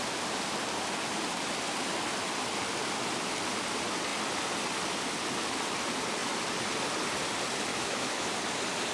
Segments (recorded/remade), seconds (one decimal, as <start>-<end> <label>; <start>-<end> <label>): 0.0-7.7 recorded; 7.7-8.3 remade; 8.3-8.9 recorded